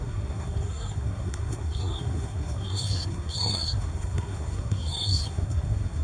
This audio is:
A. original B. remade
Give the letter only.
B